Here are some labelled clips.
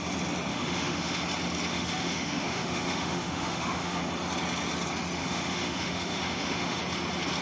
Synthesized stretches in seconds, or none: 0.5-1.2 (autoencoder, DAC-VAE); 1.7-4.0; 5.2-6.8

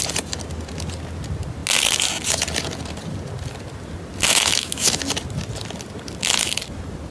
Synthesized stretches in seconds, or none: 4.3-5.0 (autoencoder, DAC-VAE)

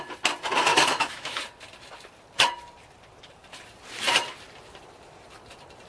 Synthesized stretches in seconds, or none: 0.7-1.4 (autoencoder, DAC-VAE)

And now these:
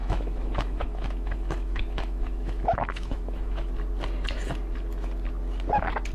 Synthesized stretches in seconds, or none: 0.0-3.7 (autoencoder, DAC-VAE)

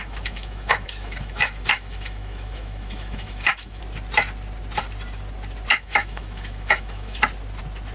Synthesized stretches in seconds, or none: 0.0-3.8 (autoencoder, DAC-VAE); 5.7-7.2

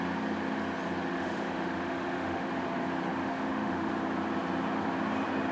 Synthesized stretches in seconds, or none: 1.1-2.5 (autoencoder, DAC-VAE); 3.1-3.9

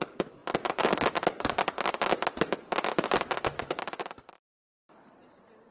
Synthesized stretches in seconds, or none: none

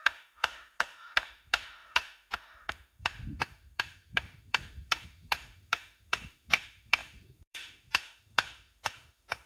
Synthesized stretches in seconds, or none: 0.0-9.5 (autoencoder, DAC-VAE)